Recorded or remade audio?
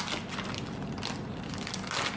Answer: recorded